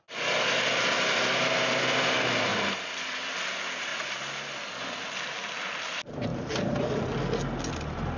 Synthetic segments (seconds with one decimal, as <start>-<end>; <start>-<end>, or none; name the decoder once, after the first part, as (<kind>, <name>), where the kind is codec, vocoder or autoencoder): 2.5-3.3 (vocoder, BigVGAN v2); 6.3-7.0